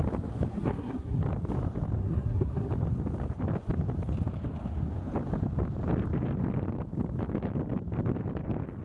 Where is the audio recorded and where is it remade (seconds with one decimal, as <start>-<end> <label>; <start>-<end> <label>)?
0.0-0.5 recorded; 0.5-1.2 remade; 1.2-2.0 recorded; 2.0-2.7 remade; 2.7-8.8 recorded